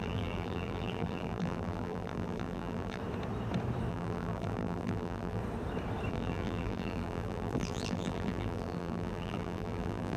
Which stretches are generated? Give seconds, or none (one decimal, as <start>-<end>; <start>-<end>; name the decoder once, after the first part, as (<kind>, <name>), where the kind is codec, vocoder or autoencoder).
0.0-3.0 (vocoder, BigVGAN v2); 3.9-5.4; 6.1-10.2